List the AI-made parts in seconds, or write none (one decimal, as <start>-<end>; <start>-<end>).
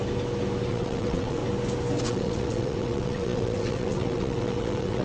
0.7-1.4; 2.0-5.0